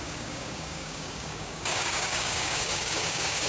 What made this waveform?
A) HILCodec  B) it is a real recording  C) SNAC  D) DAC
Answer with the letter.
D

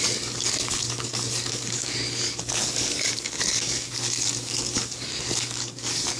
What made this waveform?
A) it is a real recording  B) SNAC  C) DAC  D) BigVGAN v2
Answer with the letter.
C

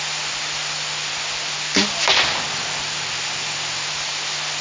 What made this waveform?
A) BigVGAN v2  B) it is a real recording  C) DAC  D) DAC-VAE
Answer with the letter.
B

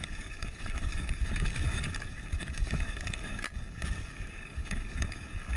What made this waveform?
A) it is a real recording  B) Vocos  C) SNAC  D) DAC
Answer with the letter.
D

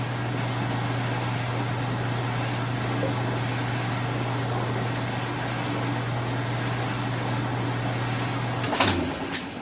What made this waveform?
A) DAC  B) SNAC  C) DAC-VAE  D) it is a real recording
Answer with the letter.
D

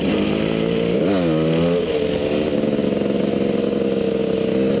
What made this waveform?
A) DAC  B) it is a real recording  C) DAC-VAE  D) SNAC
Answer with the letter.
B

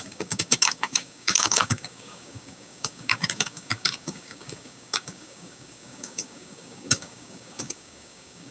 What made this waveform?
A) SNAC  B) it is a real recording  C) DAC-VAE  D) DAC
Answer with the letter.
D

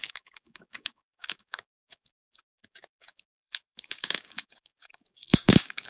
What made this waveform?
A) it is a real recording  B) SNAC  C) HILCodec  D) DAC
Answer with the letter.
D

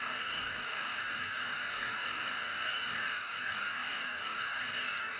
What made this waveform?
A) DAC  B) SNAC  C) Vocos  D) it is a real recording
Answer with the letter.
A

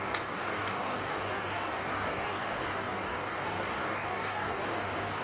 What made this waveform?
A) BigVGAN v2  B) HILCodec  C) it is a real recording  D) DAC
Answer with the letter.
D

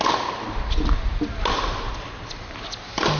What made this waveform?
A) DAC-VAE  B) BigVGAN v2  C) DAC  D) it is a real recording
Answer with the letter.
D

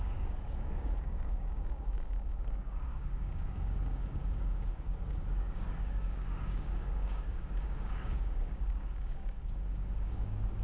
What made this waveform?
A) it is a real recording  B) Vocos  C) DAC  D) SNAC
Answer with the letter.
C